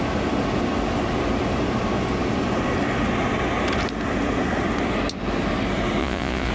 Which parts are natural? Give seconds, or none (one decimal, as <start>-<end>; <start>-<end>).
0.0-6.0